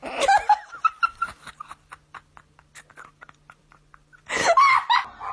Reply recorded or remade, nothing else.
recorded